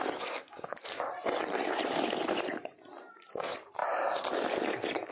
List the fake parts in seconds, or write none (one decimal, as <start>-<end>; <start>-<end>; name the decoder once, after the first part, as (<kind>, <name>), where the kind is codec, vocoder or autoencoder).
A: none